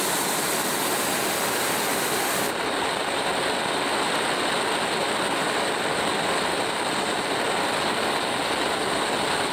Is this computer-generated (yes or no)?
no